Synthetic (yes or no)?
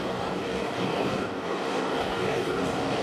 yes